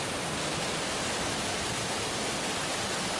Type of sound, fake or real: real